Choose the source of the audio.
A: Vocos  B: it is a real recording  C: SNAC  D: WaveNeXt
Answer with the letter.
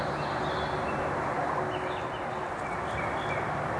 B